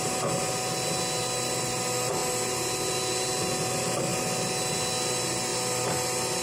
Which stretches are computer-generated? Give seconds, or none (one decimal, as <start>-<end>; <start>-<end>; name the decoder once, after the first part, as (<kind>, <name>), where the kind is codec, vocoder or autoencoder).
none